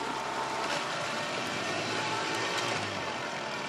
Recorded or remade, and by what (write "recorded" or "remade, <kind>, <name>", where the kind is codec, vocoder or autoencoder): remade, vocoder, BigVGAN v2